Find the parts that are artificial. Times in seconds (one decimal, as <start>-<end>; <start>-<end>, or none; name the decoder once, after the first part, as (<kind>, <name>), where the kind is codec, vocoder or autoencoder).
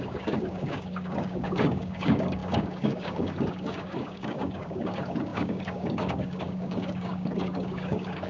0.0-8.3 (codec, DAC)